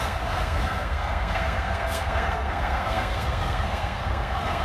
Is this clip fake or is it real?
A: fake